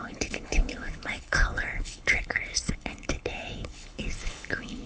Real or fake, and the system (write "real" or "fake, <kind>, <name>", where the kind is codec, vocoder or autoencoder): fake, codec, HILCodec